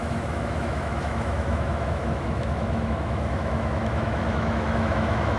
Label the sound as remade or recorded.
remade